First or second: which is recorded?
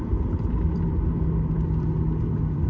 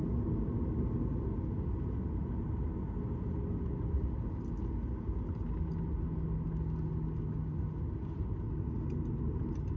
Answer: second